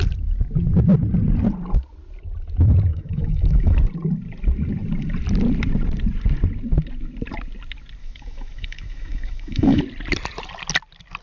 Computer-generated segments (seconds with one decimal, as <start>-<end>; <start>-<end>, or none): 2.9-3.8; 8.0-9.8